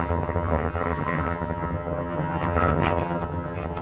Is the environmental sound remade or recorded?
remade